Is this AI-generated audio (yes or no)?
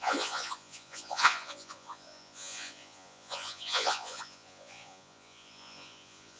yes